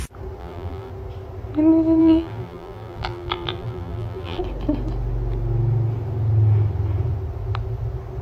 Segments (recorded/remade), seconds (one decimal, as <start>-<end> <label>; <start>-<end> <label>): 0.0-0.4 recorded; 0.4-0.9 remade; 0.9-2.0 recorded; 2.0-4.4 remade; 4.4-8.2 recorded